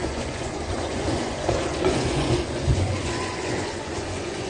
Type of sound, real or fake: fake